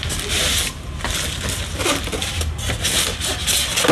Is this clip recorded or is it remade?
recorded